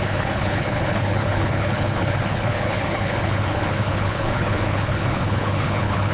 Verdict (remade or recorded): remade